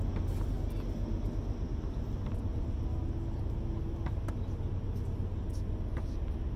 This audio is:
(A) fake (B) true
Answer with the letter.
B